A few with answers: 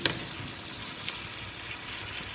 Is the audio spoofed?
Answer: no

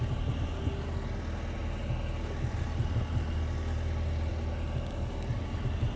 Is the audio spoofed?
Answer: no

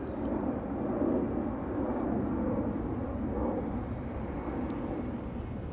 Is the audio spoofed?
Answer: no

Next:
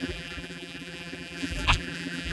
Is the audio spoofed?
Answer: yes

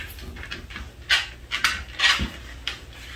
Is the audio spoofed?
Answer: no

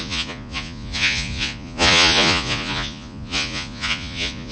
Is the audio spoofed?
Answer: yes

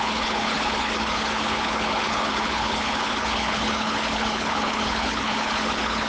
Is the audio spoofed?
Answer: yes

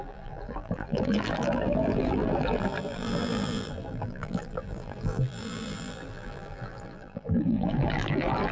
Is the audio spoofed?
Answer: yes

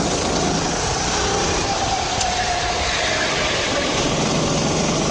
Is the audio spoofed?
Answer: no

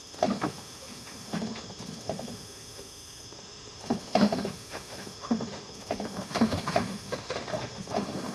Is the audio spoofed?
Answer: yes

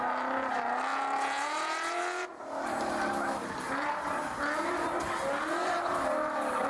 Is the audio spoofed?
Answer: no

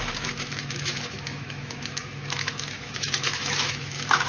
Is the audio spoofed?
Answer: yes